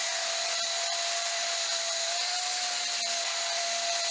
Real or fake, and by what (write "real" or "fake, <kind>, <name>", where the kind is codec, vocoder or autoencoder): fake, vocoder, BigVGAN v2